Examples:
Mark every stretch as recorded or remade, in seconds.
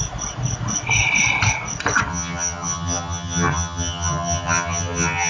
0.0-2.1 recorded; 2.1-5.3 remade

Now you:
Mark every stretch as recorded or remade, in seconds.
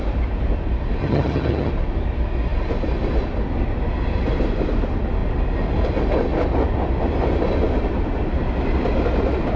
0.0-1.0 recorded; 1.0-1.7 remade; 1.7-9.6 recorded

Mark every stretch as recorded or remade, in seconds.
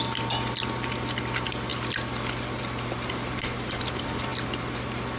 0.0-5.2 recorded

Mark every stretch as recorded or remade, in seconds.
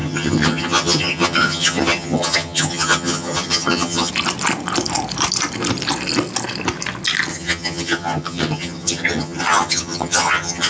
0.0-4.1 remade; 4.1-7.3 recorded; 7.3-10.7 remade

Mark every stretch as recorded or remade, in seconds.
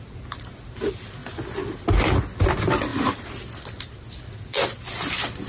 0.0-5.5 recorded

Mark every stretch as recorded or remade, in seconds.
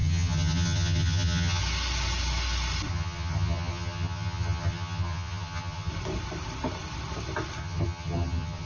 0.0-1.6 remade; 1.6-2.9 recorded; 2.9-5.9 remade; 5.9-7.6 recorded; 7.6-8.7 remade